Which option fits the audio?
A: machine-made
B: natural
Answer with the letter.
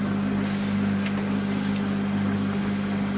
B